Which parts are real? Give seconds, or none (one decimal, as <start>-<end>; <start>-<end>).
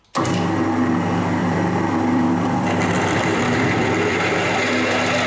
0.0-1.4; 4.6-5.3